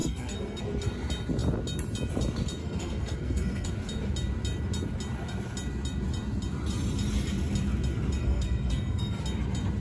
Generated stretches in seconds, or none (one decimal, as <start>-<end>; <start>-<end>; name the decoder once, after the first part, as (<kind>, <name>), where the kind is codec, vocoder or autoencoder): 0.0-0.6 (codec, SNAC); 2.6-3.7; 8.2-9.2